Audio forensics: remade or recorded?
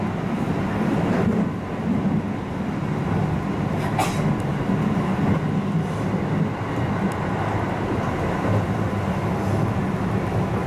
recorded